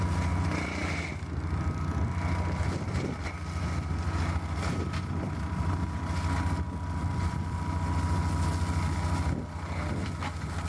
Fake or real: real